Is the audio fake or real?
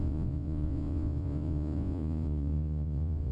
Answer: fake